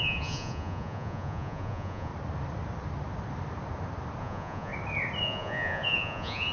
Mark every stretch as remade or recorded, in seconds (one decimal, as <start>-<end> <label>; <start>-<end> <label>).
0.0-2.1 remade; 2.1-4.2 recorded; 4.2-4.7 remade; 4.7-5.2 recorded; 5.2-6.5 remade